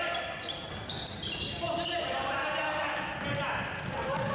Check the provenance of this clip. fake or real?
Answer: real